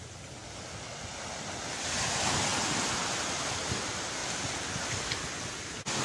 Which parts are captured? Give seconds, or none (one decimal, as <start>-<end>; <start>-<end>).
0.0-6.0